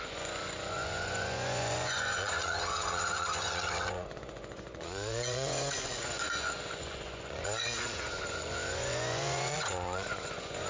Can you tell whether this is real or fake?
fake